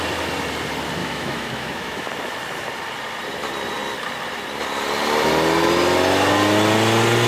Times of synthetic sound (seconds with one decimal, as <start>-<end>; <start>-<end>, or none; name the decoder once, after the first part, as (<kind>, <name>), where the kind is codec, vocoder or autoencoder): 1.0-2.1 (autoencoder, DAC-VAE)